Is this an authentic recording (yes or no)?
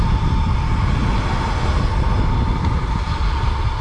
yes